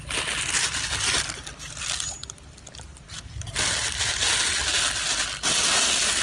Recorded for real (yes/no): yes